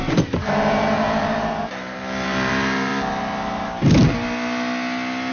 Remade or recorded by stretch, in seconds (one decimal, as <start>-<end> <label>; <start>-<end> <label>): 0.0-2.9 remade; 2.9-5.3 recorded